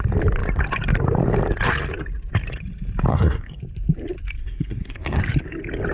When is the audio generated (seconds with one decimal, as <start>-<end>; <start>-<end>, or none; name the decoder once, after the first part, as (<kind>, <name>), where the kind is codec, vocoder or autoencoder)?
3.1-3.6 (codec, SNAC); 4.4-5.2